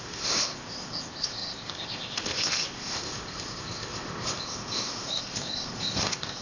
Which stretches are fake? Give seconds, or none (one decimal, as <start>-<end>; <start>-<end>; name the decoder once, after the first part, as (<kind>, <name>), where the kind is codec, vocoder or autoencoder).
0.0-6.4 (codec, ZipCodec)